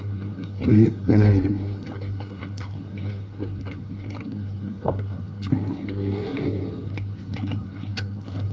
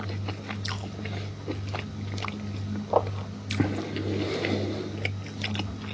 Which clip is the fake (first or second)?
first